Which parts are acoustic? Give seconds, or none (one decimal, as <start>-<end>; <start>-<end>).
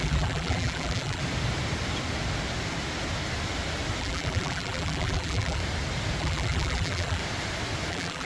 1.2-4.0; 5.6-6.2; 7.2-7.9